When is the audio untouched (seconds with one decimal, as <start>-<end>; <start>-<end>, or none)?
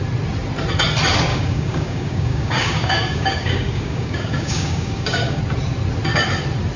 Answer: 0.0-1.3; 5.4-6.8